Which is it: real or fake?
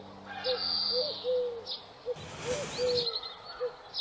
real